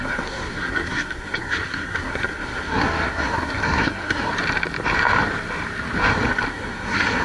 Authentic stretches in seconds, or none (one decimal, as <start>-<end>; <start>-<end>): 4.3-6.5